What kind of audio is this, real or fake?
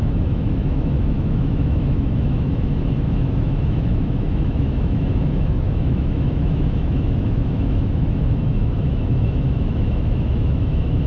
fake